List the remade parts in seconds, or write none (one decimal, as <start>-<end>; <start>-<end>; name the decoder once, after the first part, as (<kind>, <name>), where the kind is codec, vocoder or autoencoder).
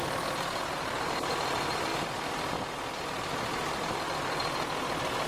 none